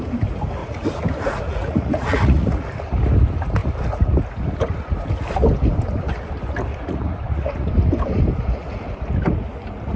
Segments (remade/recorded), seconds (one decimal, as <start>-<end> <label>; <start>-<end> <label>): 0.0-0.6 recorded; 0.6-2.7 remade; 2.7-6.7 recorded; 6.7-7.7 remade; 7.7-10.0 recorded